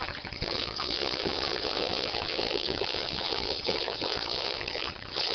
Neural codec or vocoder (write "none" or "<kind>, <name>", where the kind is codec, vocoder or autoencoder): vocoder, WaveNeXt